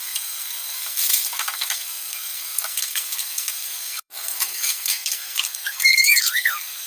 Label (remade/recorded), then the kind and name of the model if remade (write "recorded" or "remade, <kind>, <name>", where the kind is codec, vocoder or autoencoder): remade, codec, SNAC